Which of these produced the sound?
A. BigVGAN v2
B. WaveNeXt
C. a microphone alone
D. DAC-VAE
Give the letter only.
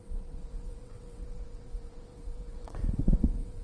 B